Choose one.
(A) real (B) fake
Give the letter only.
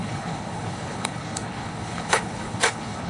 B